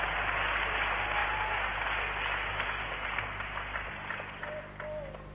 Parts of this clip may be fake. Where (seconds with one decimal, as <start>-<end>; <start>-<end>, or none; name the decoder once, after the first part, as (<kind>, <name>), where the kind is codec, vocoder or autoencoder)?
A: none